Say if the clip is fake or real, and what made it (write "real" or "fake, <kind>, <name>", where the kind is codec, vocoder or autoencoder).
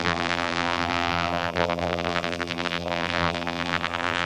fake, vocoder, BigVGAN v2